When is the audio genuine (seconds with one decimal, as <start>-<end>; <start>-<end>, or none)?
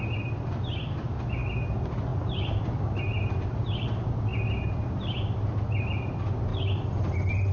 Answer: 2.1-3.0; 4.3-5.8; 6.5-7.0